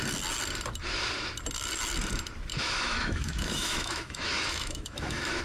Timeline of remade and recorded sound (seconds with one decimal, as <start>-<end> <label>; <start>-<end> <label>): 0.0-2.5 recorded; 2.5-5.4 remade